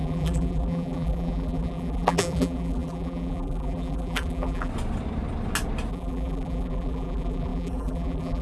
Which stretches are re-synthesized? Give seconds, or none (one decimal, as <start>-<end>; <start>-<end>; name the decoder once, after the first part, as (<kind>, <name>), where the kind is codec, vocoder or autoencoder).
0.0-4.7 (vocoder, BigVGAN v2); 5.9-8.4